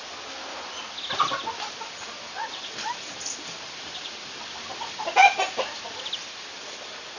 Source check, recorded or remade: recorded